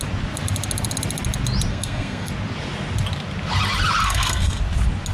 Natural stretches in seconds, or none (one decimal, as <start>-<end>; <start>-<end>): 0.0-1.7; 2.3-4.0; 4.6-5.1